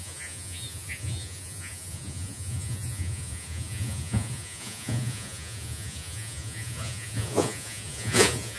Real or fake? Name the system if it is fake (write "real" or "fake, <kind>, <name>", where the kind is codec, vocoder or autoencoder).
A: fake, vocoder, Vocos